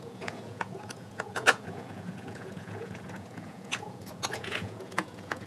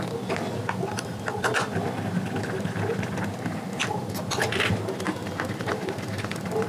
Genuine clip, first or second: second